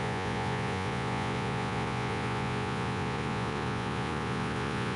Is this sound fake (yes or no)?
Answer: yes